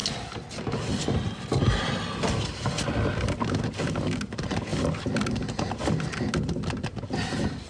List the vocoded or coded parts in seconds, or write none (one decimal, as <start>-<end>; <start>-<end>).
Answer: none